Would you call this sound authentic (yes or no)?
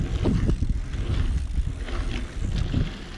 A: yes